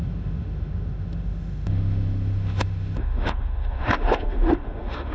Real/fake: fake